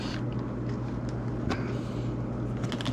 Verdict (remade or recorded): recorded